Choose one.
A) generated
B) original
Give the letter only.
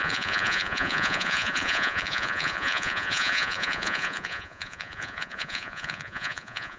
A